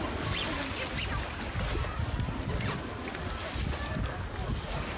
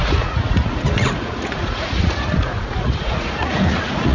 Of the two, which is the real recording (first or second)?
first